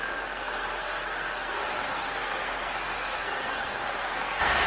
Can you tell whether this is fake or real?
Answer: fake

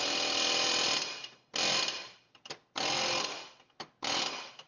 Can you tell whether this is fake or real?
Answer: real